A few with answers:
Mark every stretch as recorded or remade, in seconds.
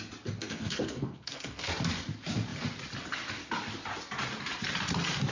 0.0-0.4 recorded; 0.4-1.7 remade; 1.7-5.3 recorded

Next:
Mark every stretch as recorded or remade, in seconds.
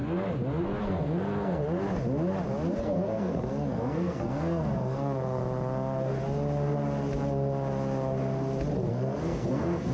0.0-0.8 recorded; 0.8-1.6 remade; 1.6-2.8 recorded; 2.8-5.4 remade; 5.4-8.9 recorded; 8.9-9.9 remade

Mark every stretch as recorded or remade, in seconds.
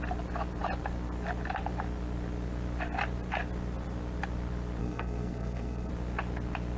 0.0-4.8 recorded; 4.8-5.9 remade; 5.9-6.8 recorded